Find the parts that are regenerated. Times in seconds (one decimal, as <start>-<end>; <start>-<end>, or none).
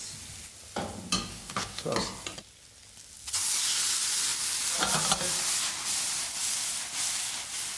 1.3-1.9